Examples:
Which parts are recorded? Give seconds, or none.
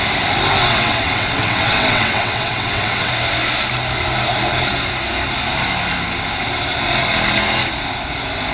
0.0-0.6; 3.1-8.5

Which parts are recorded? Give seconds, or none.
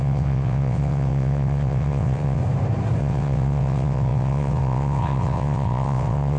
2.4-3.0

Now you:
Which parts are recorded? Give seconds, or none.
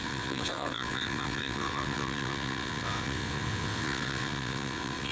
none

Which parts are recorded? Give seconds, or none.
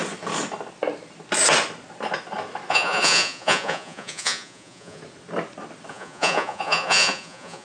0.0-2.7; 5.0-5.9